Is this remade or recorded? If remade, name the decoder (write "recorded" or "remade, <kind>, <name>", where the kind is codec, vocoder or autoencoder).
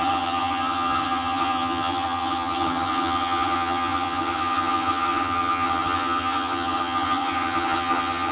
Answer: remade, vocoder, HiFi-GAN